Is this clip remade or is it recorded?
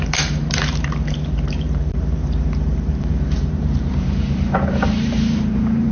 remade